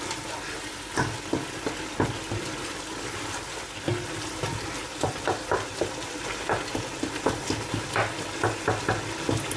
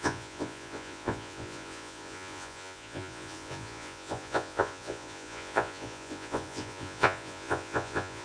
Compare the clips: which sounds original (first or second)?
first